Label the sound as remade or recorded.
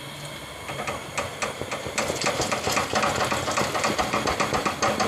recorded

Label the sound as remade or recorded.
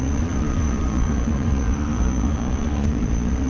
remade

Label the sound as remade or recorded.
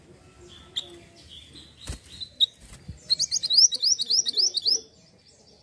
recorded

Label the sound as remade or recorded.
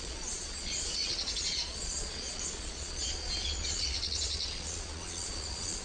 remade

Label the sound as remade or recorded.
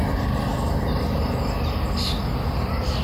recorded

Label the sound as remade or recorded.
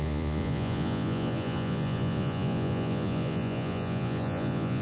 remade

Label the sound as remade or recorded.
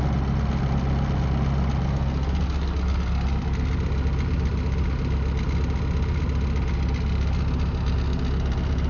recorded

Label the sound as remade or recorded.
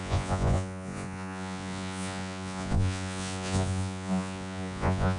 remade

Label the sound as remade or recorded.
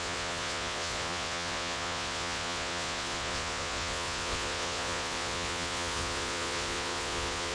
remade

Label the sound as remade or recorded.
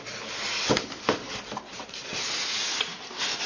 recorded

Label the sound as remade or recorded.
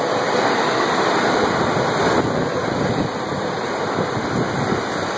recorded